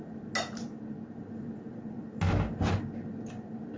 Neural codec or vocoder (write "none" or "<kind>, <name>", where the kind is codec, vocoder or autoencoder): none